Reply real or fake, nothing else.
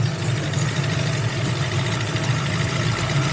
real